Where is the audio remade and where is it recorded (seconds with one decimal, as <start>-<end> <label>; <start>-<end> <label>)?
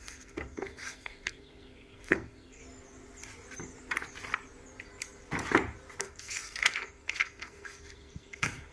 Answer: 0.0-2.6 remade; 2.6-6.0 recorded; 6.0-8.7 remade